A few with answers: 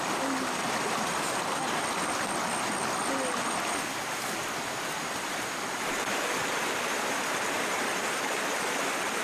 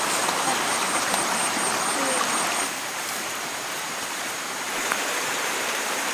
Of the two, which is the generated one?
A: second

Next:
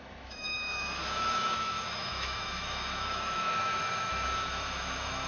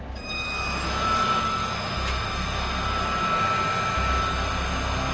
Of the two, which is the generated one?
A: first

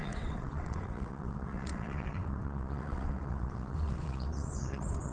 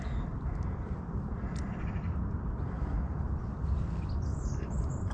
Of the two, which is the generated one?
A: first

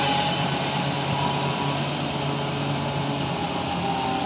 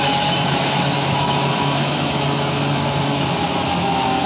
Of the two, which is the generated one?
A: second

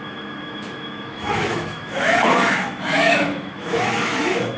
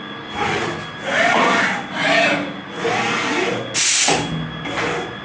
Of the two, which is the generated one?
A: first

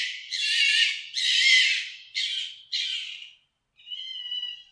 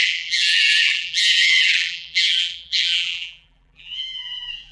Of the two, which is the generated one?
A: second